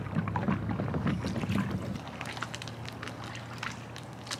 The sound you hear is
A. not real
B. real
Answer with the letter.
B